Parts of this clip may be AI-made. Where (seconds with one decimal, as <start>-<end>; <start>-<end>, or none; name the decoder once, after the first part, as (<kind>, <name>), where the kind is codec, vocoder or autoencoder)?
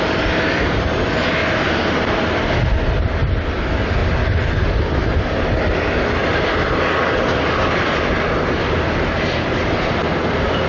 none